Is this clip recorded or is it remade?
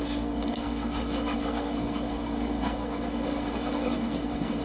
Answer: remade